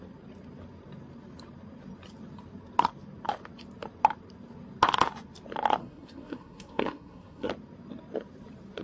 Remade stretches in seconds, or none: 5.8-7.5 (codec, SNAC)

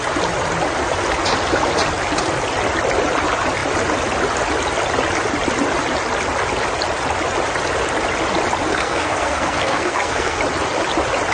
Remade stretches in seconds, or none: 8.7-10.4 (codec, SNAC)

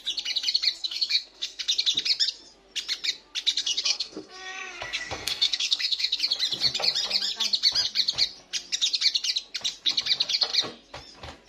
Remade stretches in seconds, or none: 0.8-1.6 (codec, SNAC); 3.6-6.2